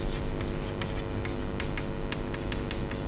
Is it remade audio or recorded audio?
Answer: recorded